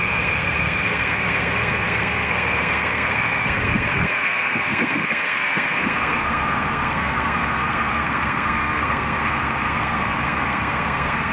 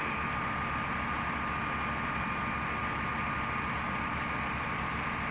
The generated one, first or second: first